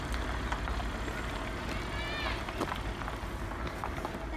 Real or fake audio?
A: real